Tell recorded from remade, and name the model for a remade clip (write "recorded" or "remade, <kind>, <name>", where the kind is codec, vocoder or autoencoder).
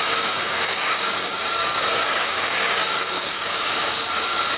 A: remade, codec, DAC